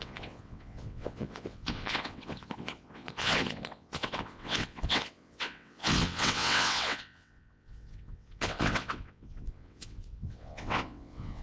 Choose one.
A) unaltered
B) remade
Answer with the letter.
B